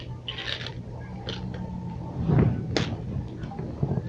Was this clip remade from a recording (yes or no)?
no